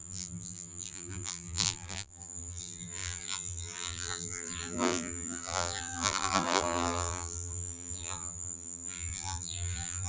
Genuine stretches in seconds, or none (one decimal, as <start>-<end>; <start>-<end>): none